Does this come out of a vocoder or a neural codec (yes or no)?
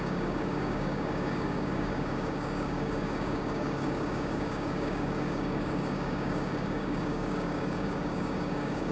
yes